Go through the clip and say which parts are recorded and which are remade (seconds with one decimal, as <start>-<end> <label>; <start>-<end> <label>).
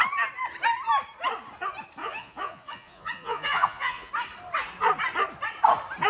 0.0-2.0 recorded; 2.0-4.1 remade; 4.1-6.1 recorded